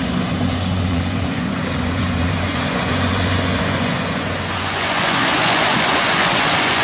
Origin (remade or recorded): remade